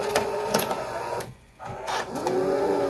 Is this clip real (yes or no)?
no